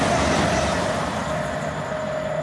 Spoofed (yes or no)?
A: no